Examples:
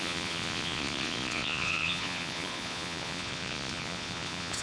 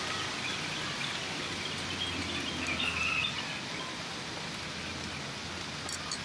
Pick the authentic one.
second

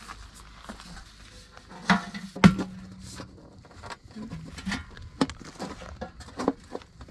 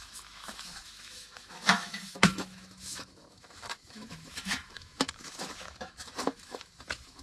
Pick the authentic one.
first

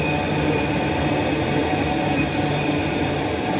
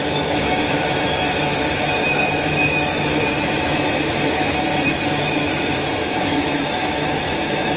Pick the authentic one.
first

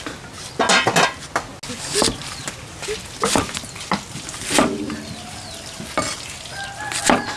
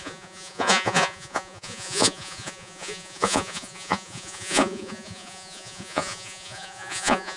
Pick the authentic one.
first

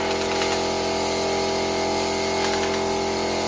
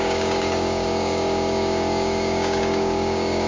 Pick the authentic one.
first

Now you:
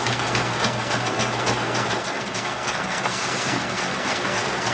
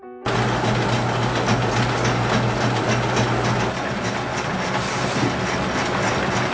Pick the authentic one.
second